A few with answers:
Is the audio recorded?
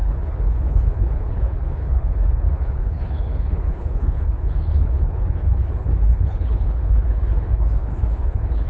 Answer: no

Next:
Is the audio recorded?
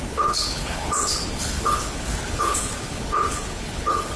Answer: no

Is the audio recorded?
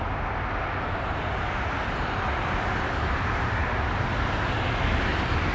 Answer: yes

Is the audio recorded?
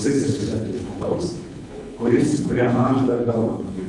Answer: no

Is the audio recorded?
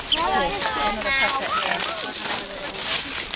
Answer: yes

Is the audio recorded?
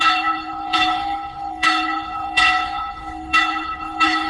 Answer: no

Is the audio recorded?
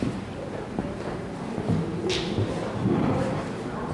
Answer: yes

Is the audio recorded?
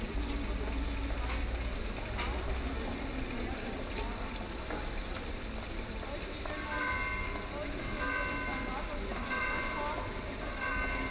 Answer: yes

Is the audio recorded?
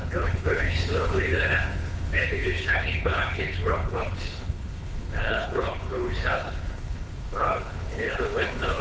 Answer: no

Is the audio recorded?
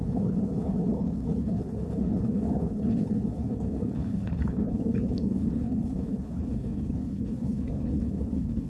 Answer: no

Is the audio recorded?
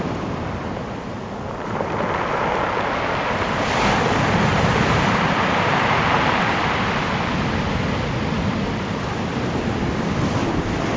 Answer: yes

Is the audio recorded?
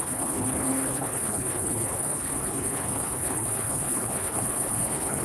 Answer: no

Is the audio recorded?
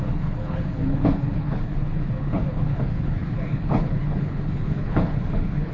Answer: no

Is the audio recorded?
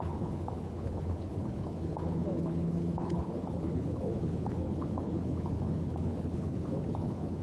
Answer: no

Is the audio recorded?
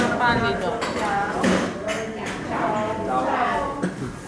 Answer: yes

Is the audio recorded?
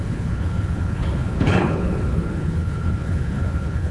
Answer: no